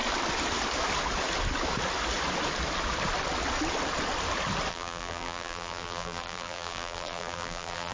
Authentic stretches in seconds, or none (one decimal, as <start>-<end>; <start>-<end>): 0.0-4.7

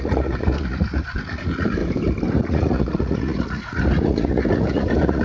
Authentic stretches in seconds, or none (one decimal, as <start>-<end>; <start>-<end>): 1.8-2.3

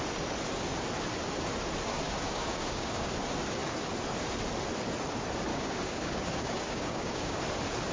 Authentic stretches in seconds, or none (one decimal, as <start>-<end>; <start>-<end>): 0.0-1.9; 3.1-5.5; 7.4-7.9